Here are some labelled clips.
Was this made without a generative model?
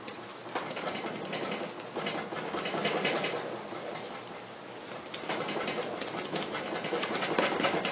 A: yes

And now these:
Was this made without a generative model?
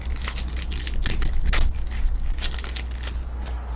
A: yes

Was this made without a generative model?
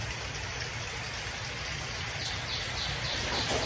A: yes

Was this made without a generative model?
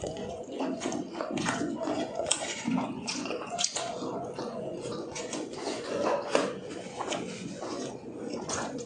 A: no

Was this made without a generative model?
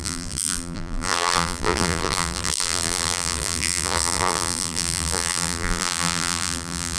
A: no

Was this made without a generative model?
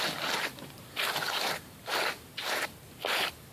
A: yes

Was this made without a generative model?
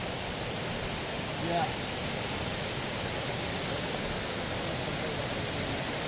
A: yes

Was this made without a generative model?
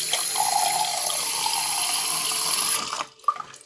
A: yes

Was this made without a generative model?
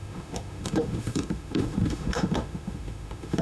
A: no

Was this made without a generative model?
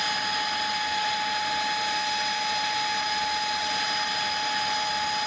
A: yes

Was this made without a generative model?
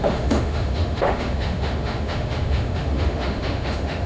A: no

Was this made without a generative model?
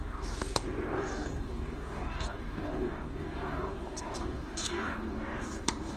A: no